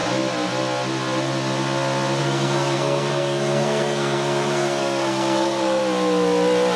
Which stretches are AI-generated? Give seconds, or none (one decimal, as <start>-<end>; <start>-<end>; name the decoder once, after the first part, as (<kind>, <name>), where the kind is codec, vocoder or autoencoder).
2.2-5.8 (codec, SNAC)